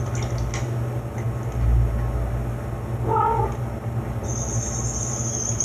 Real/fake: real